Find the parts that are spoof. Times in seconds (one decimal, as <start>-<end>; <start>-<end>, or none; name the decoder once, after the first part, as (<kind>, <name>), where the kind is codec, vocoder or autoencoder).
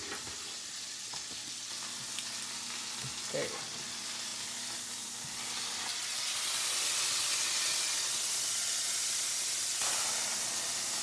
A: none